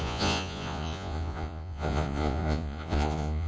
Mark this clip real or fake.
fake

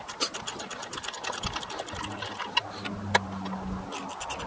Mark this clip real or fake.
real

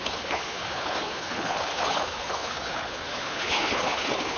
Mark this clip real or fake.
fake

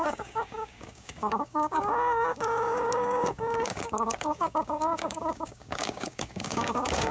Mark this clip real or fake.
fake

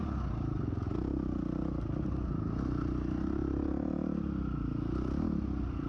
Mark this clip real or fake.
real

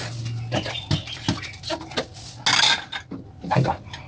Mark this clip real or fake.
real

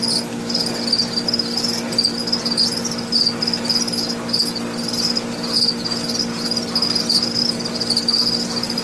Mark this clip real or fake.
real